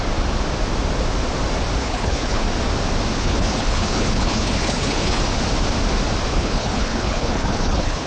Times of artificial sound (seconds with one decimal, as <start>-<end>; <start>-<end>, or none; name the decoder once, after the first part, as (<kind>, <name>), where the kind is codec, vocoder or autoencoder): 1.8-2.4 (codec, HILCodec); 3.2-5.2; 6.3-8.1